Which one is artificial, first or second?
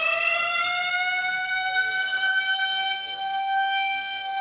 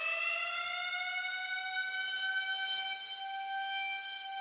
first